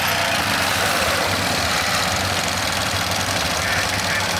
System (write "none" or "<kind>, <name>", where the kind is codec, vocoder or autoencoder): none